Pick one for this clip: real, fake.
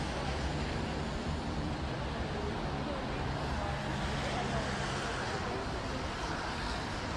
real